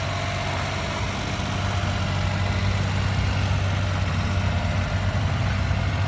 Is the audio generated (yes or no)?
no